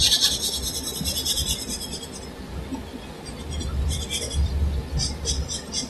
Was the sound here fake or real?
real